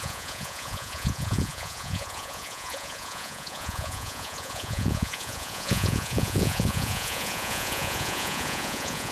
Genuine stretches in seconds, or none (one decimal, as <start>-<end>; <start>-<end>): none